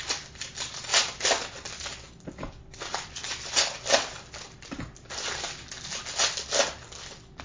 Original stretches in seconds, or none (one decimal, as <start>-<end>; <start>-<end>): 0.0-7.4